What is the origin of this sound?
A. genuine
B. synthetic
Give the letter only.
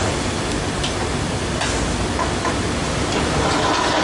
A